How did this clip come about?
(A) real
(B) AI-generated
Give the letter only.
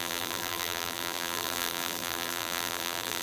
B